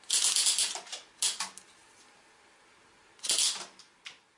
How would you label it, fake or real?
real